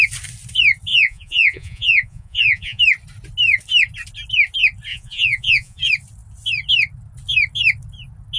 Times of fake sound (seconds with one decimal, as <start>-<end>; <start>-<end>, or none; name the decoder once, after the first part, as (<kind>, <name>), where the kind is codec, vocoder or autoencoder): 0.9-2.8 (vocoder, Vocos); 4.9-5.8